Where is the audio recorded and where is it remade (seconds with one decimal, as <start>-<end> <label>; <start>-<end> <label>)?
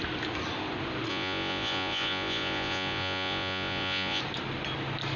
0.0-1.1 recorded; 1.1-4.2 remade; 4.2-5.2 recorded